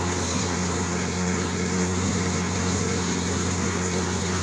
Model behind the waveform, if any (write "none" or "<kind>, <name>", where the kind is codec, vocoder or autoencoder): codec, SNAC